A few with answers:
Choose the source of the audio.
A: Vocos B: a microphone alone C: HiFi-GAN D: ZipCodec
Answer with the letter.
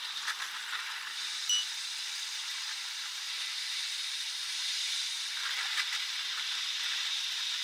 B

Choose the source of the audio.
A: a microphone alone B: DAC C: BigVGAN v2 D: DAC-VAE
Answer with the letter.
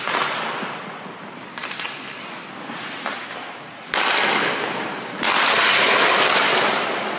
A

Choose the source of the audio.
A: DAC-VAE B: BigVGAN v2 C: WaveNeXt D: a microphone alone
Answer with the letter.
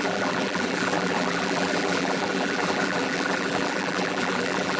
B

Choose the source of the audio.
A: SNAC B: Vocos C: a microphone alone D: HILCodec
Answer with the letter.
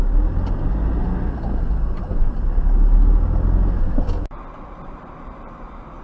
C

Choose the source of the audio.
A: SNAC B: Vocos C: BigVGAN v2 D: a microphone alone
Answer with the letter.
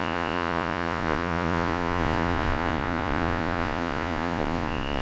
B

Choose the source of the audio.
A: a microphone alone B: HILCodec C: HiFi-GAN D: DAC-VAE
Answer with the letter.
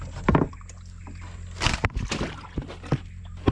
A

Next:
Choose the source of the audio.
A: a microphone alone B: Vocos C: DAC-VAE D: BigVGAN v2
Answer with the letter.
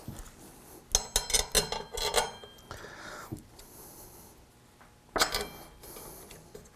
A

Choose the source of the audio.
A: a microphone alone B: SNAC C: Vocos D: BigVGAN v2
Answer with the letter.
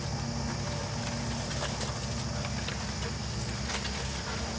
A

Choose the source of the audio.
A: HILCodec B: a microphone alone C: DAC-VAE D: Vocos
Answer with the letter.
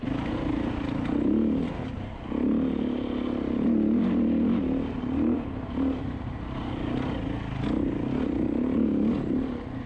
B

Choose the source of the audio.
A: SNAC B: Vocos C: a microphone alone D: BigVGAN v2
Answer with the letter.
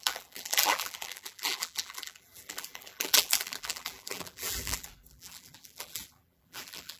D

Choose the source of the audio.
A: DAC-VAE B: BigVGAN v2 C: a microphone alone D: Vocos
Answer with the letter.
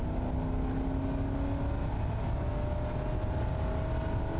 C